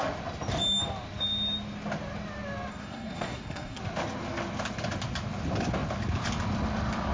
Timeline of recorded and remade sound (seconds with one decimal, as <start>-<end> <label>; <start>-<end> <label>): 0.0-2.7 recorded; 2.7-3.8 remade; 3.8-7.1 recorded